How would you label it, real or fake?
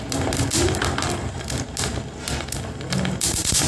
real